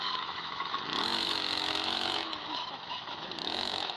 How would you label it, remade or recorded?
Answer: remade